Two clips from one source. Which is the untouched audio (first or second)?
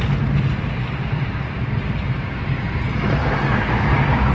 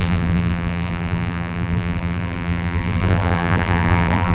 first